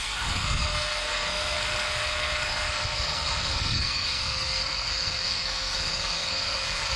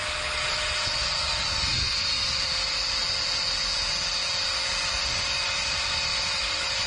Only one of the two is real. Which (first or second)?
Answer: second